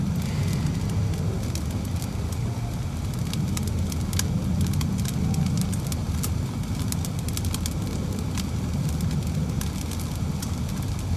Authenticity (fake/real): real